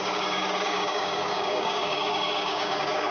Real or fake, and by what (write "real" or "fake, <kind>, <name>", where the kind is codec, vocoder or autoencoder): fake, codec, DAC